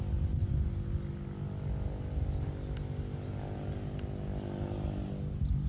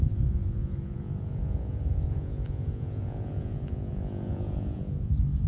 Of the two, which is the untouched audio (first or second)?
first